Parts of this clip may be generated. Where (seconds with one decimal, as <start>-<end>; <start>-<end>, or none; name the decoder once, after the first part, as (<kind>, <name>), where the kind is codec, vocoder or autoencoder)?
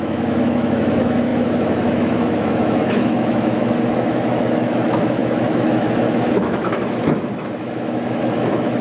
0.0-8.8 (autoencoder, DAC-VAE)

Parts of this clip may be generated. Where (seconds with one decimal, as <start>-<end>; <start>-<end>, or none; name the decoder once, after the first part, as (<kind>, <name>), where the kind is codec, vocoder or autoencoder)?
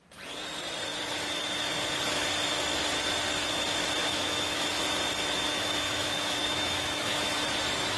4.0-4.8 (autoencoder, DAC-VAE); 5.5-7.3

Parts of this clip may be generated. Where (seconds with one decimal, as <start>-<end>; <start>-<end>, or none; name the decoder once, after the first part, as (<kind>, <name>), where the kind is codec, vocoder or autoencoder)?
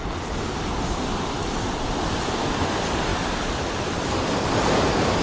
none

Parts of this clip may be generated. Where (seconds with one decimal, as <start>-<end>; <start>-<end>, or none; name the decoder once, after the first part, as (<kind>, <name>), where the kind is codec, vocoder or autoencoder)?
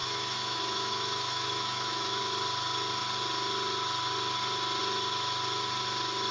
0.0-2.2 (autoencoder, DAC-VAE)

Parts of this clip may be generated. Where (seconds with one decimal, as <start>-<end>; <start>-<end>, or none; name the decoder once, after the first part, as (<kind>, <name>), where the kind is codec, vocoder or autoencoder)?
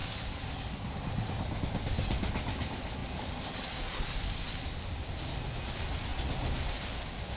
none